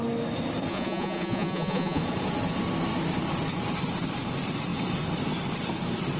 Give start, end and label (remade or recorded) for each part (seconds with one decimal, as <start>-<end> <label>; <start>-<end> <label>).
0.0-0.7 recorded; 0.7-2.0 remade; 2.0-6.2 recorded